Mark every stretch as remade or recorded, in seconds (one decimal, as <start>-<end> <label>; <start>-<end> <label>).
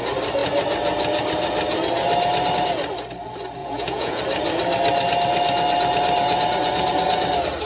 0.0-3.6 recorded; 3.6-4.2 remade; 4.2-7.7 recorded